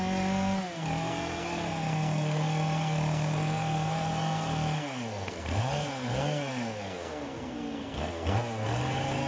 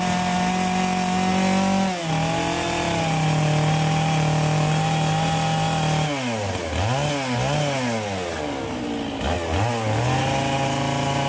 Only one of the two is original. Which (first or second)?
second